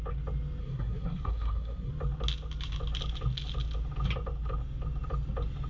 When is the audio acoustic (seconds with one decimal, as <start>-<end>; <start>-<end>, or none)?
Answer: 0.0-0.6; 1.9-5.7